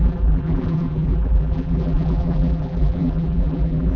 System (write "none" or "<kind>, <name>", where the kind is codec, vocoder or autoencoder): vocoder, BigVGAN v2